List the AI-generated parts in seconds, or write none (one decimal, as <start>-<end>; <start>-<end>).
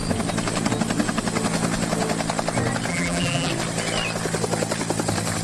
2.9-3.5